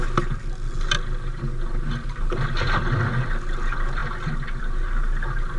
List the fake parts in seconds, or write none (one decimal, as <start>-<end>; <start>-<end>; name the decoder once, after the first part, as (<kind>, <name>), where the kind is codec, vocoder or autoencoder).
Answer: none